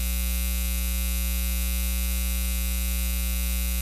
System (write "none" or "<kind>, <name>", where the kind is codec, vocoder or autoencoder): none